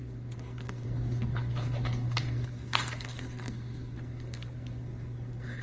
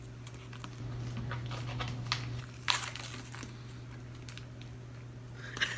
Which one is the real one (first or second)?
second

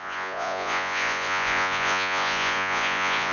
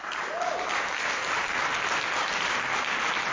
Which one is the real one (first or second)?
second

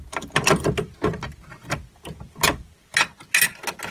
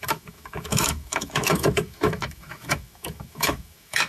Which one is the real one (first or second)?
first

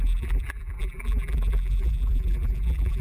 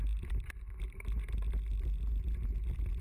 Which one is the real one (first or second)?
second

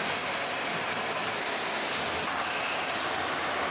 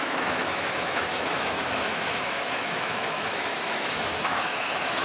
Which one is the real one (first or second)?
first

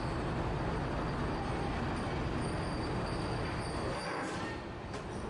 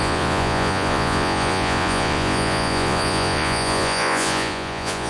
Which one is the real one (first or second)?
first